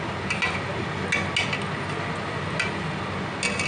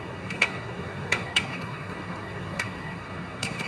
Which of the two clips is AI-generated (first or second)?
second